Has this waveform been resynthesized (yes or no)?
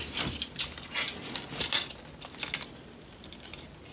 no